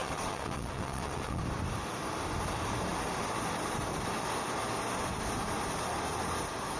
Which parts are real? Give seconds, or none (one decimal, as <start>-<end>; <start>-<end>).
1.4-6.8